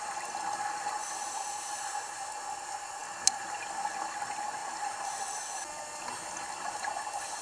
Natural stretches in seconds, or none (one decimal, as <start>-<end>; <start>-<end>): 0.0-7.4